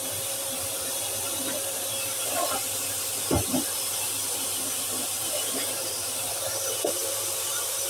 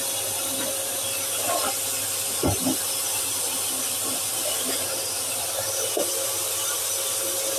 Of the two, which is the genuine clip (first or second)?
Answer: second